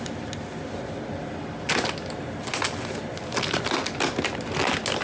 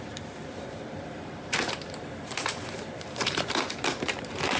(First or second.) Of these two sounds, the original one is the first